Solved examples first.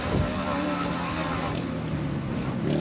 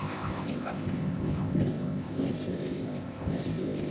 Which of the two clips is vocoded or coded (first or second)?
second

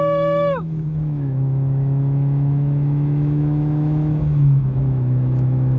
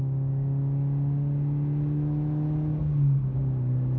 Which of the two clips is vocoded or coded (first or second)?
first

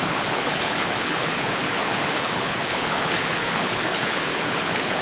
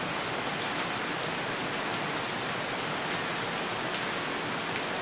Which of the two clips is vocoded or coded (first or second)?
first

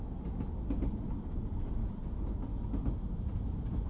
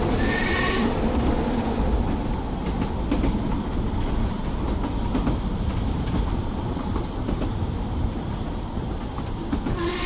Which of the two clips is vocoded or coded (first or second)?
second